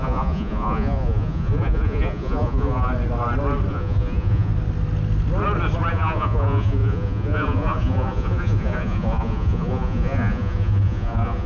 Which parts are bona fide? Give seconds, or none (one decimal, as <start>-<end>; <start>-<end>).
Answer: 2.9-3.7; 4.5-5.9